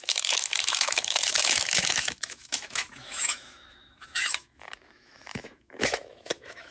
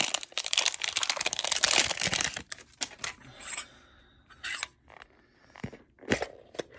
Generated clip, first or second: first